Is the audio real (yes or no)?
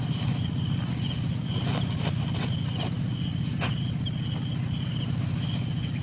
yes